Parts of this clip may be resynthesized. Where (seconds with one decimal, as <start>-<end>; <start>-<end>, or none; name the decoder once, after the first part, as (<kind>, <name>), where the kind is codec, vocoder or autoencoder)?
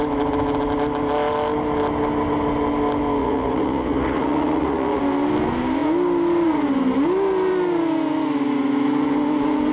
3.2-5.0 (vocoder, Vocos)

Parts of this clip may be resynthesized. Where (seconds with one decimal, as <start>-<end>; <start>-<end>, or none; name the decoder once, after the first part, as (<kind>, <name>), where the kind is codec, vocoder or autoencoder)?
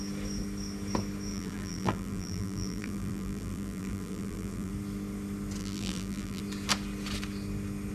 1.3-4.7 (vocoder, BigVGAN v2); 5.6-6.4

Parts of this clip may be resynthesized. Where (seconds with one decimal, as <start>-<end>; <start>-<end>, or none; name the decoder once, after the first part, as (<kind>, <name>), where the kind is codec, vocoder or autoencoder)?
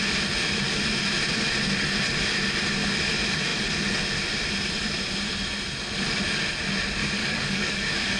7.2-8.2 (codec, DAC)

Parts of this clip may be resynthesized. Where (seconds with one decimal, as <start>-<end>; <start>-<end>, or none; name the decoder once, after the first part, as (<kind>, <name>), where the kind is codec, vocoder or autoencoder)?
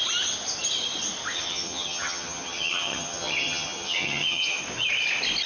1.3-4.6 (vocoder, HiFi-GAN)